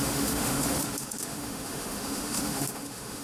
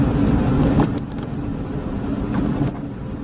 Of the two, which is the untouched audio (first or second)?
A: second